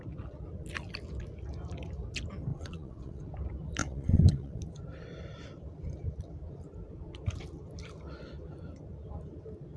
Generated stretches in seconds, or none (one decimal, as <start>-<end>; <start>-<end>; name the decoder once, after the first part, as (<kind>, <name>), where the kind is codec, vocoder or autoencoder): 2.5-3.2 (vocoder, WaveNeXt); 3.8-4.6